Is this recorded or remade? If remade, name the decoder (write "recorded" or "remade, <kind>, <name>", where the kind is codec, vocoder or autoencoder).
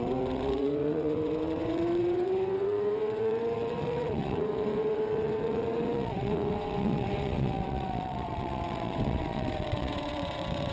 remade, vocoder, WaveNeXt